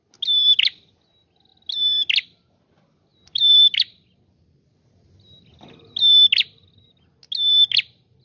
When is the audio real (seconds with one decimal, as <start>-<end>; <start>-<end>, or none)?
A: 0.0-3.1; 5.5-8.2